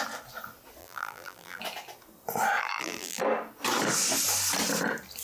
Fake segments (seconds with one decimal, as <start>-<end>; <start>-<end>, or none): 0.8-1.6; 2.6-3.2